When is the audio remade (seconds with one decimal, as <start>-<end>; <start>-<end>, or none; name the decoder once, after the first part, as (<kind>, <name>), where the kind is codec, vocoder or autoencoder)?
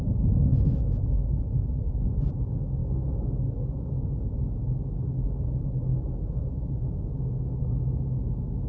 0.5-1.9 (autoencoder, DAC-VAE); 2.8-3.4; 5.9-8.0